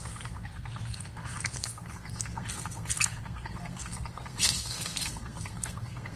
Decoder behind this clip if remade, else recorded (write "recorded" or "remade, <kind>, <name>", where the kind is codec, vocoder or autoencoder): remade, codec, SNAC